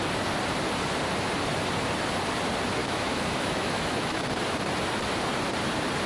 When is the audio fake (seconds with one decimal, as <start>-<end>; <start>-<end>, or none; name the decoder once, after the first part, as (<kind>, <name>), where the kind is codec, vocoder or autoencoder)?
2.8-4.2 (autoencoder, DAC-VAE)